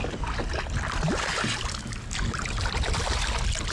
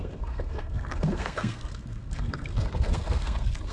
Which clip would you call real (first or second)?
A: first